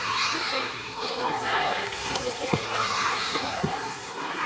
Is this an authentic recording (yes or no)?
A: no